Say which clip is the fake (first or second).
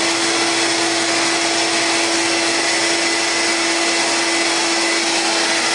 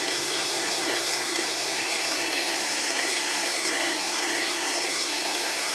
second